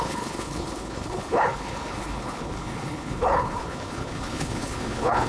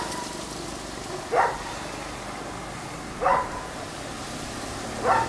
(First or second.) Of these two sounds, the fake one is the first